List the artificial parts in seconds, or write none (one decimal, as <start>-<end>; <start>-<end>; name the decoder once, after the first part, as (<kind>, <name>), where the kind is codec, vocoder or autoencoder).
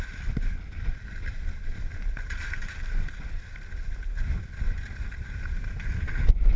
none